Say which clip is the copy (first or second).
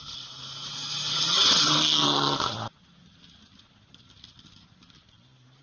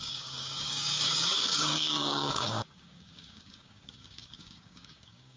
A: second